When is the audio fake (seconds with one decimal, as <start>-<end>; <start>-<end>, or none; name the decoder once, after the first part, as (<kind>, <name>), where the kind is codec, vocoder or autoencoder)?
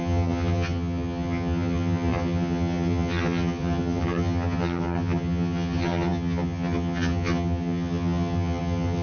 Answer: 0.0-9.0 (vocoder, HiFi-GAN)